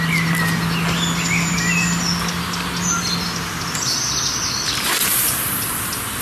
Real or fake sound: real